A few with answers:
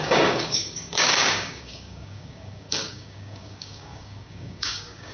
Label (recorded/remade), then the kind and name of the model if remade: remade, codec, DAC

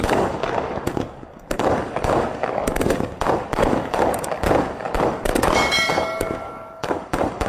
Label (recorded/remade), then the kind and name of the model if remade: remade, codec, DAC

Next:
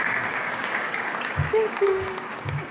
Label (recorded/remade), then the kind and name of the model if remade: remade, codec, DAC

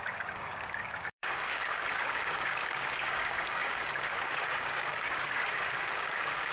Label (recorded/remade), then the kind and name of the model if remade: remade, codec, DAC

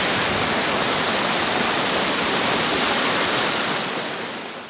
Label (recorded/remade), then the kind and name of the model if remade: recorded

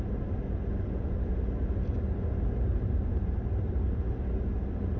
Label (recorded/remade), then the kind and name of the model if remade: recorded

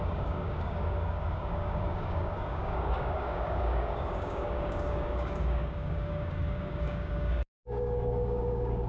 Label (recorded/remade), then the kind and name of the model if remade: remade, codec, DAC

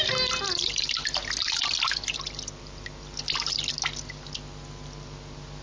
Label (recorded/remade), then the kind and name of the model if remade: recorded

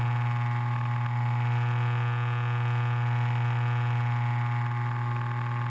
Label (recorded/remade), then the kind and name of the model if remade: recorded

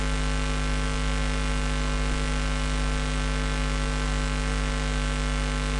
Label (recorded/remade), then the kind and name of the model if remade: recorded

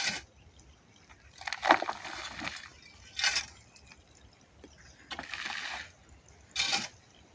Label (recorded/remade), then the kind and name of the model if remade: recorded